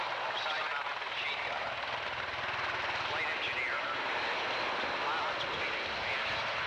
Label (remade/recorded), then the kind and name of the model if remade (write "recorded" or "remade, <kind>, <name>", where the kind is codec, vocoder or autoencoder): recorded